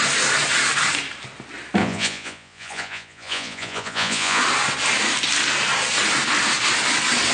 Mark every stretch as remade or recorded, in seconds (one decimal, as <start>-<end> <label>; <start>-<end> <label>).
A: 0.0-1.8 recorded; 1.8-4.4 remade; 4.4-7.3 recorded